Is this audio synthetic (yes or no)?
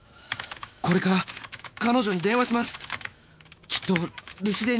yes